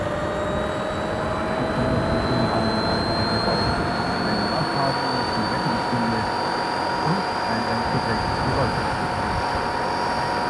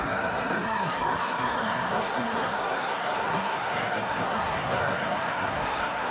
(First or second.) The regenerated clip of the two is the second